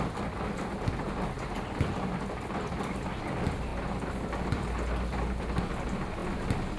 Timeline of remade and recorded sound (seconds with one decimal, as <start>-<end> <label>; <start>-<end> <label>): 0.0-6.8 recorded

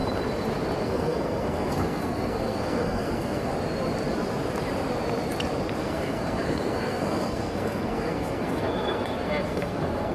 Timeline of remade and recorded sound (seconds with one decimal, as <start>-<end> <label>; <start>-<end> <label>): 0.0-0.8 recorded; 0.8-3.5 remade; 3.5-5.8 recorded; 5.8-10.1 remade

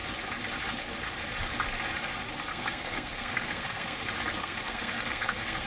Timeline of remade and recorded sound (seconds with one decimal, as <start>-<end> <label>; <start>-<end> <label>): 0.0-2.5 recorded; 2.5-4.0 remade; 4.0-4.4 recorded; 4.4-5.7 remade